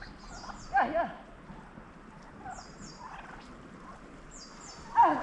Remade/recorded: recorded